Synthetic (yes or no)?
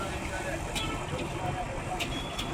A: no